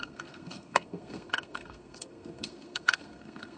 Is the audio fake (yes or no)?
yes